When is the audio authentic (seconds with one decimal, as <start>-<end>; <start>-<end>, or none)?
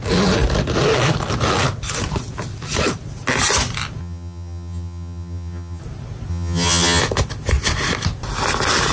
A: 0.0-4.0; 5.8-6.3; 7.0-8.9